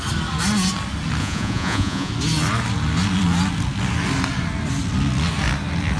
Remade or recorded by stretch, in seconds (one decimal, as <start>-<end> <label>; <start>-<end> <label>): 0.0-1.2 recorded; 1.2-2.1 remade; 2.1-6.0 recorded